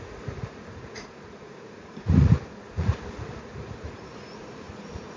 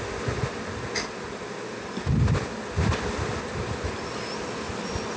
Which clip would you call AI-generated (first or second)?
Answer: first